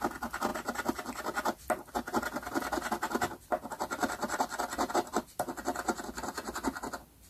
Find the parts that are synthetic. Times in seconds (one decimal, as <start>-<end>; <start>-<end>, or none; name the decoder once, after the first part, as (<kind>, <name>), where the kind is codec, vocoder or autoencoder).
none